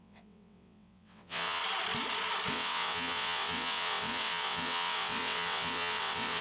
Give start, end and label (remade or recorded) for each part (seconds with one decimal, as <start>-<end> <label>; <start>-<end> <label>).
0.0-1.6 remade; 1.6-2.5 recorded; 2.5-6.4 remade